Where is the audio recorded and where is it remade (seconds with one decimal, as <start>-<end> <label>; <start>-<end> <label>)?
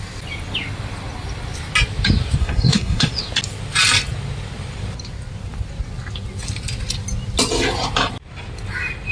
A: 0.0-2.4 recorded; 2.4-3.1 remade; 3.1-9.1 recorded